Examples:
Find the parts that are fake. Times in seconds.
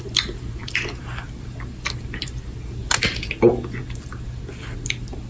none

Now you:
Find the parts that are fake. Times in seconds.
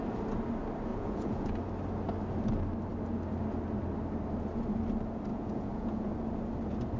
0.9-1.6 (vocoder, Vocos); 5.3-6.1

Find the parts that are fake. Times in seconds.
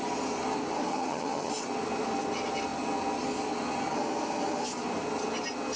0.9-1.5 (vocoder, HiFi-GAN)